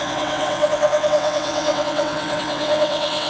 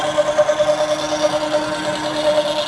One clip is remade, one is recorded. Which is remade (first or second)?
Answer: first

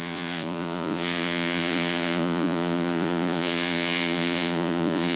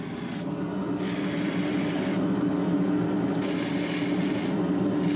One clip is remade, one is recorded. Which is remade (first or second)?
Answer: first